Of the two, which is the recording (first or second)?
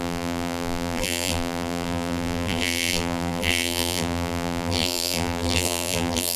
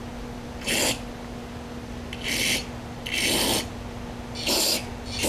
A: second